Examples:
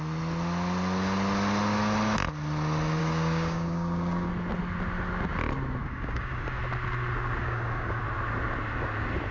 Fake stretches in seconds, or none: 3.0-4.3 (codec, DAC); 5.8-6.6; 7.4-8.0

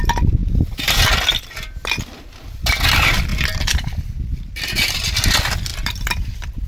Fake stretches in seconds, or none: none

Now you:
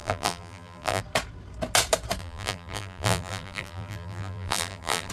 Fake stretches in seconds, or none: 0.0-1.0 (vocoder, BigVGAN v2); 2.2-5.1

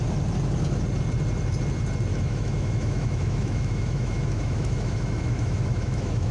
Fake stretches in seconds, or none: 2.1-6.3 (autoencoder, DAC-VAE)

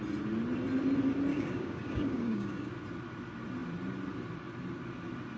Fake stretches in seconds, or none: 1.3-2.7 (codec, DAC)